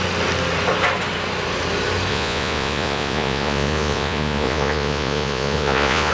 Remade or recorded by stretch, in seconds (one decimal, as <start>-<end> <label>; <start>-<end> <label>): 0.0-2.1 recorded; 2.1-6.1 remade